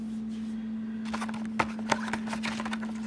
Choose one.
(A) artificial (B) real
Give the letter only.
B